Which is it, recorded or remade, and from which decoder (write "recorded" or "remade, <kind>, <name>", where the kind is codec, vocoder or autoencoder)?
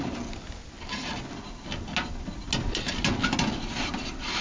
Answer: recorded